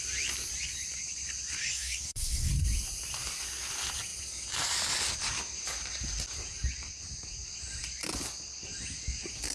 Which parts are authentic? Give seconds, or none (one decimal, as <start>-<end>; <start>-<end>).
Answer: 0.0-1.6; 2.5-9.5